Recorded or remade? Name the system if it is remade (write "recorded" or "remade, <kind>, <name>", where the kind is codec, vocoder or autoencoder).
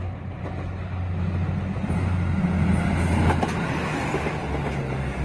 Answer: recorded